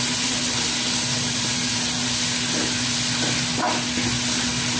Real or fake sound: real